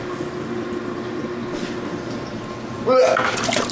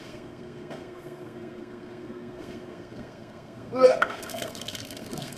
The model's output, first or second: second